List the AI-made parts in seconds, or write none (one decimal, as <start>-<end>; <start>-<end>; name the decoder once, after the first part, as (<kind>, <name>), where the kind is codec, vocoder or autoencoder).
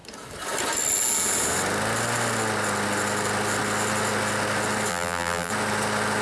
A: 4.9-5.5 (vocoder, BigVGAN v2)